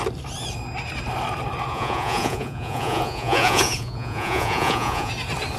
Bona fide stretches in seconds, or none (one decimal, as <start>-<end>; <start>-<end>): 0.0-1.7; 5.1-5.6